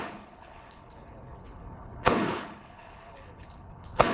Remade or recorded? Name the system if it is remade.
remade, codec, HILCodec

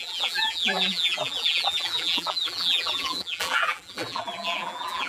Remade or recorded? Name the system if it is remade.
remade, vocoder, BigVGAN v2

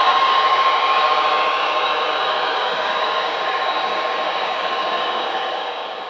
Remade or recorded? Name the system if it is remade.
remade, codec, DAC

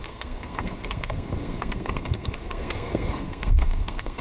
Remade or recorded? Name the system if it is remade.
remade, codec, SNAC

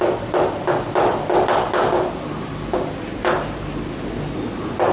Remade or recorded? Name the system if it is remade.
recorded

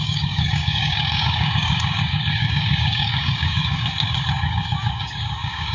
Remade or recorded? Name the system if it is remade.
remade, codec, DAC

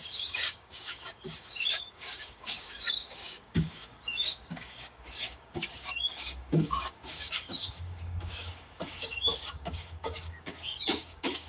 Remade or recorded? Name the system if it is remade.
remade, codec, DAC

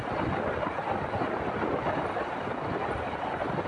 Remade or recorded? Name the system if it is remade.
recorded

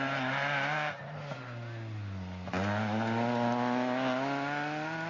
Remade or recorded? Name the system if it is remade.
recorded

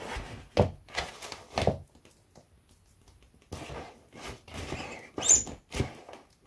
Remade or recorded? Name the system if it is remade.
recorded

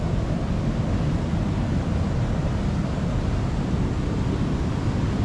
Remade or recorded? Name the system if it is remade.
recorded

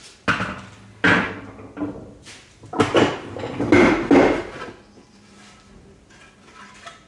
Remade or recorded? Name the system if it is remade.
recorded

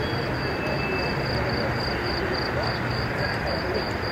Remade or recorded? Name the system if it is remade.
recorded